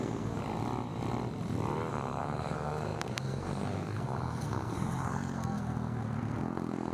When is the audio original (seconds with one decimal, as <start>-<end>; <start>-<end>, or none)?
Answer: 0.4-1.9